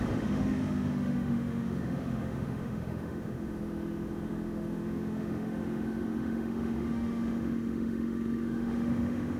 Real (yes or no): no